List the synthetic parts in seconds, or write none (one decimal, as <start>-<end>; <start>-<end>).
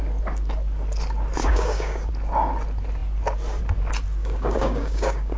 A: 1.4-2.1; 4.2-5.4